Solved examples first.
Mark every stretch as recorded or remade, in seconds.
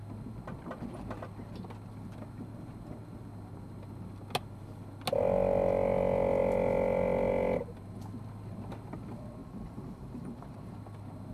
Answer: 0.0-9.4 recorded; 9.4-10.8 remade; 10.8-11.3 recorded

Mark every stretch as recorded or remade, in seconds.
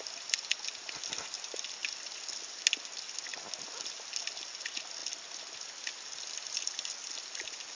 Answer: 0.0-1.8 recorded; 1.8-2.3 remade; 2.3-7.7 recorded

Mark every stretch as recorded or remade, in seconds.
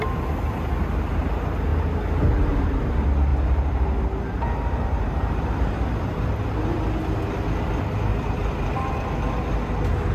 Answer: 0.0-3.3 recorded; 3.3-5.7 remade; 5.7-8.1 recorded; 8.1-8.9 remade; 8.9-10.1 recorded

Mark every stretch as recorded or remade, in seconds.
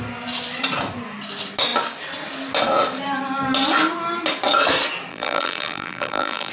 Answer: 0.0-5.1 recorded; 5.1-6.5 remade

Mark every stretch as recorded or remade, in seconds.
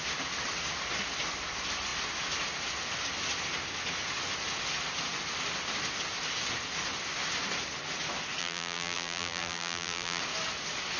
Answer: 0.0-8.4 recorded; 8.4-10.2 remade; 10.2-11.0 recorded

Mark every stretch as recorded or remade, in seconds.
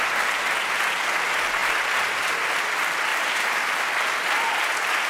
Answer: 0.0-3.1 recorded; 3.1-3.8 remade; 3.8-5.1 recorded